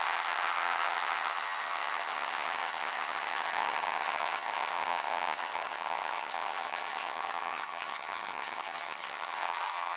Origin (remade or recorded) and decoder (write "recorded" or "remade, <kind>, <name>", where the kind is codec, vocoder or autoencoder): remade, vocoder, HiFi-GAN